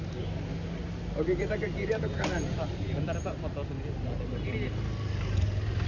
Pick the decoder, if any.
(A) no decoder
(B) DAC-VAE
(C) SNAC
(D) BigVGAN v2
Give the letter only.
A